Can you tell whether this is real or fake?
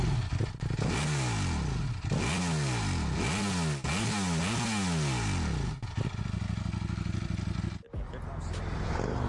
real